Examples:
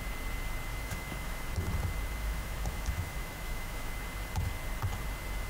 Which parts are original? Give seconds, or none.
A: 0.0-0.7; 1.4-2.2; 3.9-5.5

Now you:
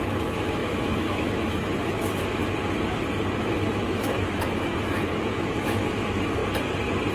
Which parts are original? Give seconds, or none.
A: 2.4-3.4; 6.4-7.1

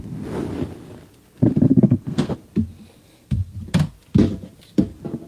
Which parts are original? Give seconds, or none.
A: 0.0-1.7; 2.3-3.0; 3.5-5.3

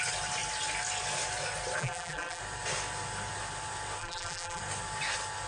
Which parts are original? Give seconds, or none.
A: 0.0-1.8; 2.4-4.0; 4.6-5.5

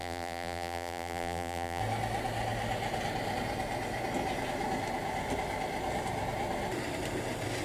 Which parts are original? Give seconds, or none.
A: 1.8-7.6